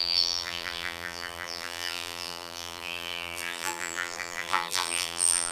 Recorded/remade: remade